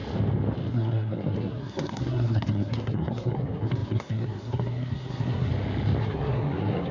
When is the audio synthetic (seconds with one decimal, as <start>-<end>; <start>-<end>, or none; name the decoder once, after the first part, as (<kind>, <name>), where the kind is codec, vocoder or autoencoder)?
0.7-5.5 (codec, SNAC); 6.0-6.9